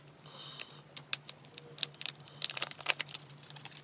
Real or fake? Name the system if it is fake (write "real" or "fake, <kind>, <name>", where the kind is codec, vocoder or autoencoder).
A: real